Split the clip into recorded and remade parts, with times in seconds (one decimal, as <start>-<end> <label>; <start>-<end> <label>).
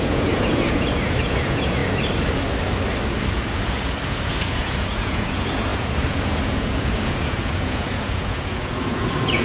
0.0-1.8 remade; 1.8-3.6 recorded; 3.6-9.4 remade